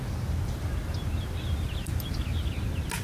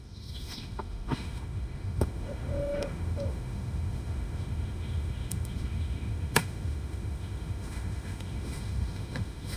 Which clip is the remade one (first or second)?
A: second